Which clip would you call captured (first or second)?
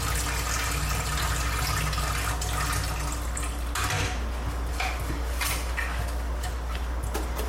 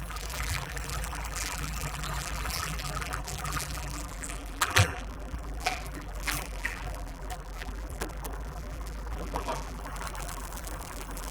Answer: first